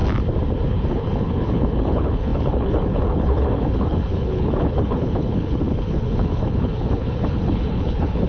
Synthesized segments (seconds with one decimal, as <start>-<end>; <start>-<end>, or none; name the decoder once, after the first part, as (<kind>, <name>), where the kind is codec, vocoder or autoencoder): 0.7-8.3 (codec, HILCodec)